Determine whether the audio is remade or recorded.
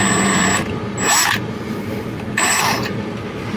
recorded